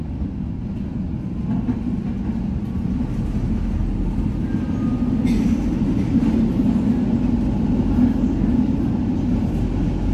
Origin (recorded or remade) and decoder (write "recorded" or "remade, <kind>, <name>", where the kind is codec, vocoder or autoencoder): recorded